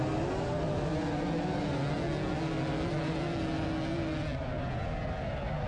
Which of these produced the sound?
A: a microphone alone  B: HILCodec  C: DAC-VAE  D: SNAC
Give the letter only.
A